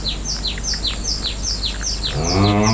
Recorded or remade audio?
recorded